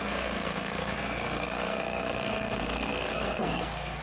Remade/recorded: remade